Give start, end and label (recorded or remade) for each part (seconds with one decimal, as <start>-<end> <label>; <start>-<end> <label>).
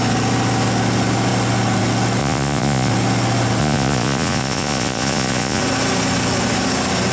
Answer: 0.0-2.2 recorded; 2.2-2.9 remade; 2.9-3.6 recorded; 3.6-5.6 remade; 5.6-7.1 recorded